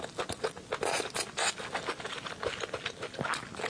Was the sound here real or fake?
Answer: real